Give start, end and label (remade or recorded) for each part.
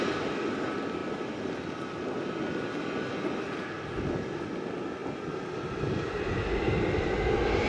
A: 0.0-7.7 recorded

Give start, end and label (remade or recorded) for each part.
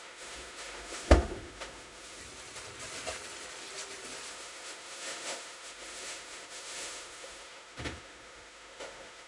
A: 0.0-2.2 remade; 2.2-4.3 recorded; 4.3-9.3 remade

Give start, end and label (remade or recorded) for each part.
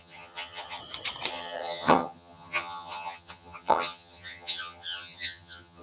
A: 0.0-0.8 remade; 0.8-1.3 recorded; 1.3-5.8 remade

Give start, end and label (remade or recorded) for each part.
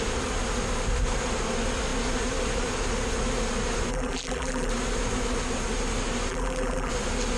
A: 0.0-3.9 recorded; 3.9-4.7 remade; 4.7-6.3 recorded; 6.3-6.9 remade; 6.9-7.4 recorded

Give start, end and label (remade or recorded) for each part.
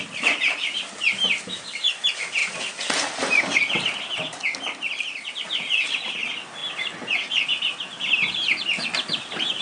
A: 0.0-9.6 recorded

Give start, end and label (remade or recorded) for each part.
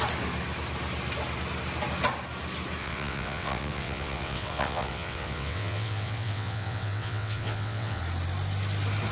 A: 0.0-2.8 recorded; 2.8-8.0 remade; 8.0-9.1 recorded